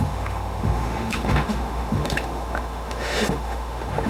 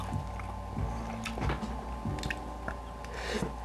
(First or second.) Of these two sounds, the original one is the second